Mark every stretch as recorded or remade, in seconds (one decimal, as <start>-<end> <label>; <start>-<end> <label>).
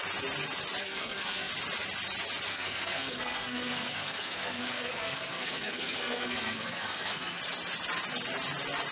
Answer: 0.0-0.8 recorded; 0.8-1.5 remade; 1.5-2.5 recorded; 2.5-7.4 remade; 7.4-8.9 recorded